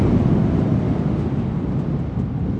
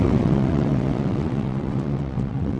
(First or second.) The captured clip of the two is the first